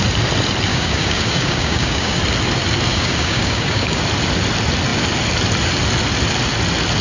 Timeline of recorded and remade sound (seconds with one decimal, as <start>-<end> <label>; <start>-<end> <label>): 0.0-0.7 recorded; 0.7-2.2 remade; 2.2-2.9 recorded; 2.9-4.0 remade; 4.0-7.0 recorded

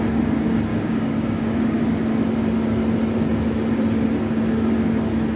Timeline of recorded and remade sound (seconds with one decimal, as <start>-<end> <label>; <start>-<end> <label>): 0.0-0.7 recorded; 0.7-1.8 remade; 1.8-5.4 recorded

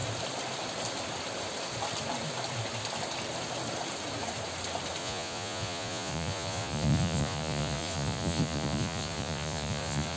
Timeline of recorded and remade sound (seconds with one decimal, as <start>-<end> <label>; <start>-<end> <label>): 0.0-5.0 recorded; 5.0-10.2 remade

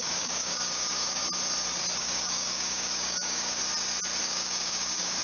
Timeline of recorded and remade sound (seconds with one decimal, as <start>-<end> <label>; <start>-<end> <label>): 0.0-1.2 remade; 1.2-2.0 recorded; 2.0-3.6 remade; 3.6-4.2 recorded; 4.2-5.2 remade

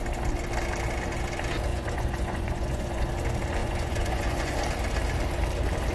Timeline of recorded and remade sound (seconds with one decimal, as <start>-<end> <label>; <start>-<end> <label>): 0.0-1.7 recorded; 1.7-3.1 remade; 3.1-3.6 recorded; 3.6-4.5 remade; 4.5-5.9 recorded

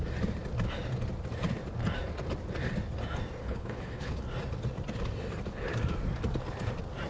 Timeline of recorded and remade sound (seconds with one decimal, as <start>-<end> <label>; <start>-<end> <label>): 0.0-3.4 recorded; 3.4-4.2 remade; 4.2-7.1 recorded